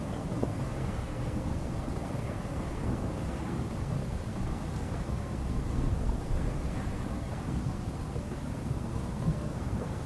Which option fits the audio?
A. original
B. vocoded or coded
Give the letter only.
B